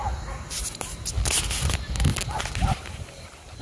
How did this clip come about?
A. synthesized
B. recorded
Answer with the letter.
B